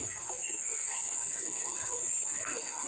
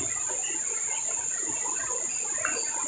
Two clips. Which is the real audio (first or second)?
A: second